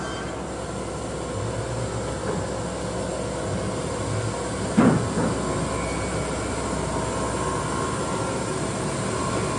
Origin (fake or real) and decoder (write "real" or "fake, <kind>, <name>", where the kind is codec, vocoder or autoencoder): real